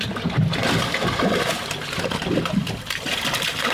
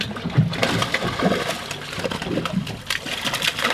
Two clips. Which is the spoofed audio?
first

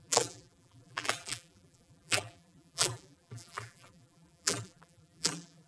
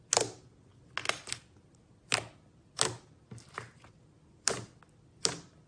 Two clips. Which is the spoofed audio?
first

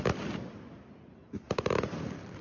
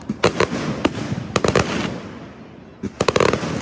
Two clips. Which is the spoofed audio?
first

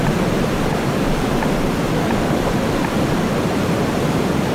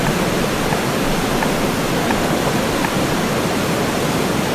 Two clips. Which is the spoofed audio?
first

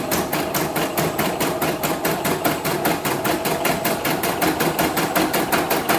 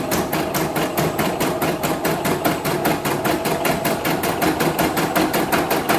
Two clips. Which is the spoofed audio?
first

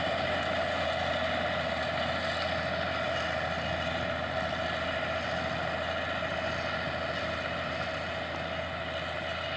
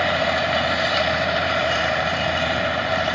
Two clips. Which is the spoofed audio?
second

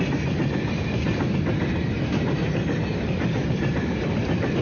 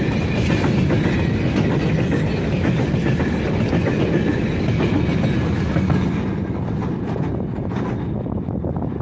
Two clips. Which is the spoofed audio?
first